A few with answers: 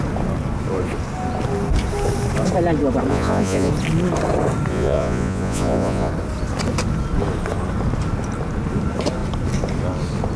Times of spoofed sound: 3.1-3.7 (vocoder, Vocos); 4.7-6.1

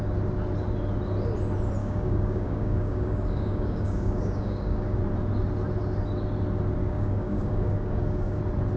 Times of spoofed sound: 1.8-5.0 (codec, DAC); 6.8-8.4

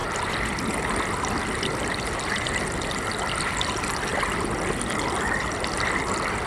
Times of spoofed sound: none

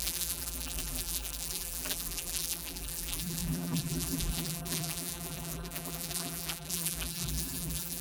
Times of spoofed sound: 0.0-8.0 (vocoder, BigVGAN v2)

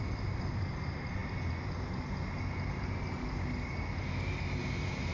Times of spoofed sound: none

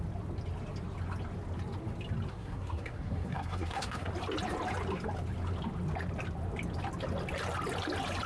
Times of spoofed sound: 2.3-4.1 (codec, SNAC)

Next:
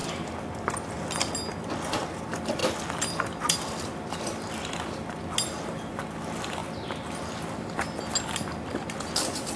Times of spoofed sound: none